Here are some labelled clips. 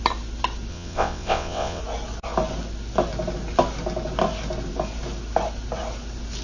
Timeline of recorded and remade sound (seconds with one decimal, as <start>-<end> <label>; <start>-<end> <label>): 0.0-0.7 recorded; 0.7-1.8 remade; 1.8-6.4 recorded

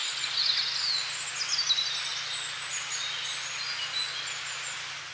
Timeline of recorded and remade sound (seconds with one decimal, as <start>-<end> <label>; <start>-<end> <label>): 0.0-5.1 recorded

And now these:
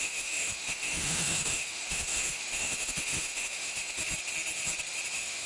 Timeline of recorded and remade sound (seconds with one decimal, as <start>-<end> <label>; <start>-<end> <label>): 0.0-4.0 remade; 4.0-5.1 recorded; 5.1-5.5 remade